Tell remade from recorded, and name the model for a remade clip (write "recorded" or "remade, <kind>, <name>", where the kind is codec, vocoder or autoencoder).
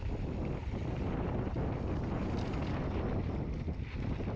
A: recorded